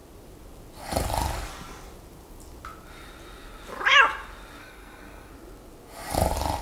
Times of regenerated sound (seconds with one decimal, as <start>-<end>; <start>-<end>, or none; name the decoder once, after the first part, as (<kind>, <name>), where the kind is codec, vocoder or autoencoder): 4.6-5.3 (codec, SNAC)